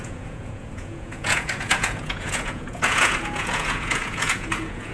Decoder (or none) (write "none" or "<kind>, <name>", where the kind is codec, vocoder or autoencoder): vocoder, Vocos